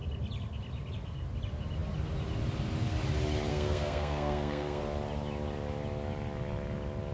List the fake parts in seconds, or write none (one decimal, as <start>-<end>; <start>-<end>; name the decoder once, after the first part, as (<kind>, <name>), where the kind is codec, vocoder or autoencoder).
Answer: 3.5-4.8 (codec, SNAC)